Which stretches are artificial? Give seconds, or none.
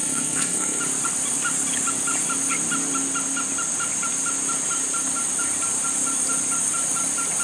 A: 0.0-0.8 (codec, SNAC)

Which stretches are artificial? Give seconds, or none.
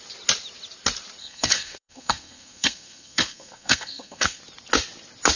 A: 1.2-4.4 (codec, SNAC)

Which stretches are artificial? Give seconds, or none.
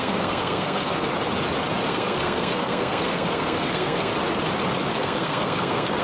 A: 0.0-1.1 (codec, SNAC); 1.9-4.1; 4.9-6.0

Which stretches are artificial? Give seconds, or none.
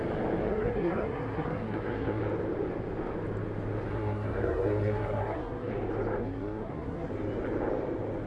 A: 0.5-2.2 (codec, SNAC); 3.9-5.7; 6.2-7.1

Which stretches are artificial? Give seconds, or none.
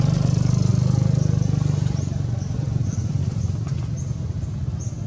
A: none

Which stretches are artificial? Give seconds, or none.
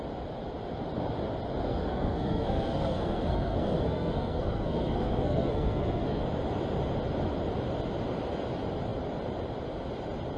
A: 1.7-6.2 (codec, SNAC)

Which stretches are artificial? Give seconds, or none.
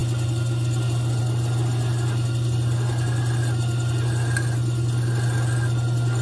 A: none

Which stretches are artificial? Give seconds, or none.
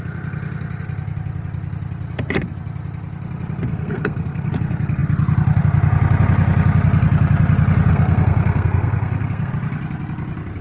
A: 3.7-4.5 (codec, SNAC); 7.9-9.5